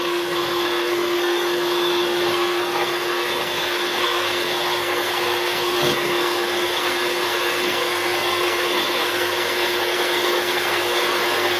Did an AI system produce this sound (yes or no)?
yes